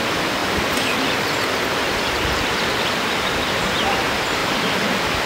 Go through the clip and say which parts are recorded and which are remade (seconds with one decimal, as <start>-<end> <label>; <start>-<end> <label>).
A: 0.0-0.4 recorded; 0.4-3.6 remade; 3.6-4.4 recorded; 4.4-5.3 remade